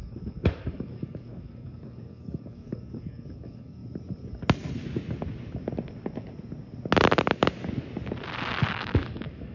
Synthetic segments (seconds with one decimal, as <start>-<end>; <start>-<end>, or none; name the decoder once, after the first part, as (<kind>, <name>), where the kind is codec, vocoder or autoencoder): 0.0-3.8 (codec, DAC); 8.7-9.5